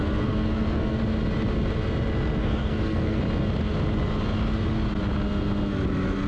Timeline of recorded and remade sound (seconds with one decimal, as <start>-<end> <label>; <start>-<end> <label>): 0.0-1.0 remade; 1.0-2.4 recorded; 2.4-3.2 remade; 3.2-6.3 recorded